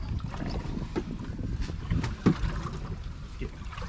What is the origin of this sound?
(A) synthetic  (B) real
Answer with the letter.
B